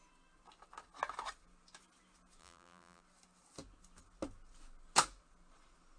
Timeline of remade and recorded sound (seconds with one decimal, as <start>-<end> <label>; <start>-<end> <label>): 0.0-2.4 recorded; 2.4-3.0 remade; 3.0-6.0 recorded